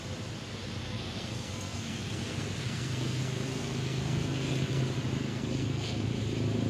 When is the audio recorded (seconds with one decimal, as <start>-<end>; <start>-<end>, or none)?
0.0-0.8; 4.8-5.2; 6.1-6.7